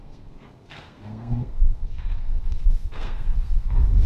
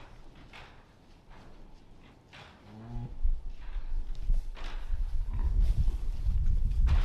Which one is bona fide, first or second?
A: second